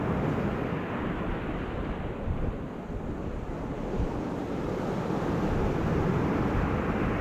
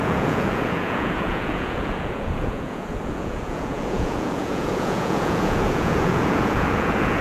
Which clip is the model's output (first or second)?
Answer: second